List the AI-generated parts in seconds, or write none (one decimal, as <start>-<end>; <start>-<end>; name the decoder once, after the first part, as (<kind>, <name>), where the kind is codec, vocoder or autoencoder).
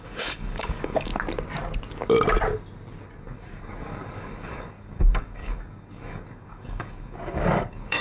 0.0-1.1 (codec, DAC); 3.2-8.0